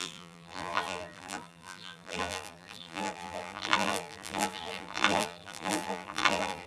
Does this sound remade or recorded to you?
remade